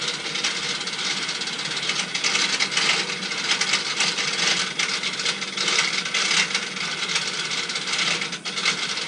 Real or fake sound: real